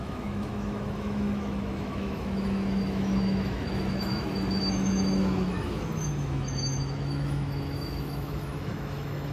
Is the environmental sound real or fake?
fake